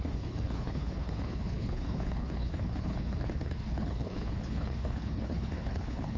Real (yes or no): no